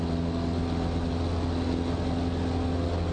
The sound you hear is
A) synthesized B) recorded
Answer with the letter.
B